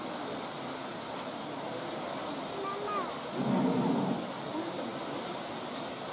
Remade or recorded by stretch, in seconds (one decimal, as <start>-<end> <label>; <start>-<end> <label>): 0.0-6.1 recorded